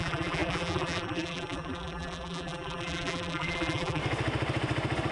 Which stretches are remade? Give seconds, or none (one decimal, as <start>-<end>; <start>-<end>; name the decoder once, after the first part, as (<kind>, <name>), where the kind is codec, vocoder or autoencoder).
0.0-4.0 (vocoder, BigVGAN v2)